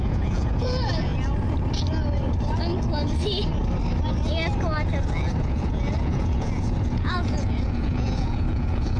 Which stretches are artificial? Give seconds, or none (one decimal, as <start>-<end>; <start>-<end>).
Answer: 0.0-1.1; 5.4-9.0